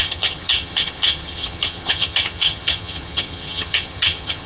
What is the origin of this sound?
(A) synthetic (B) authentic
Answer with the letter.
A